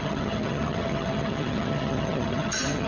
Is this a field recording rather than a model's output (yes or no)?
no